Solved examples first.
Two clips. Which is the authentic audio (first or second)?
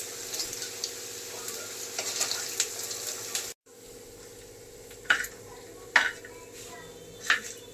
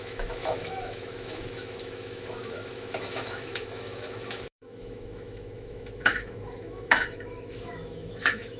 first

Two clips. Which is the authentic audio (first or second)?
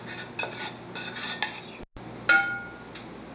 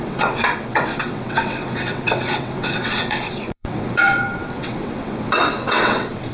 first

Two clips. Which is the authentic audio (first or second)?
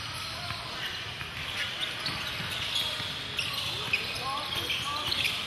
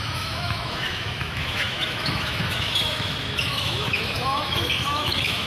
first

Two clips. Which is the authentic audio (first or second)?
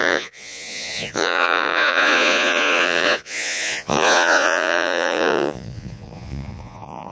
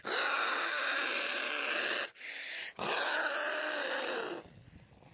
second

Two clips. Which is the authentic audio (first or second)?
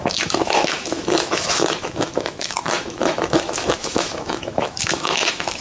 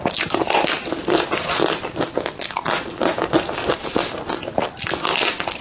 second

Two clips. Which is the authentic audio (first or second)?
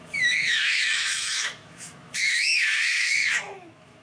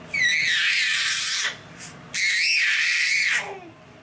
second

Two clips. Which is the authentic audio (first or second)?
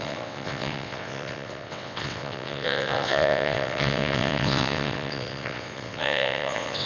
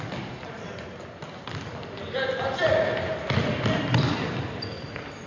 second